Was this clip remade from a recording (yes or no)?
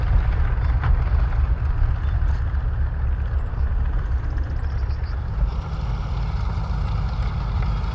no